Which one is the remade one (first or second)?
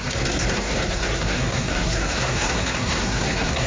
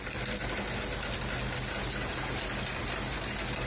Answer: first